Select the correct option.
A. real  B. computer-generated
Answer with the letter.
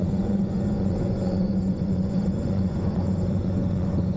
B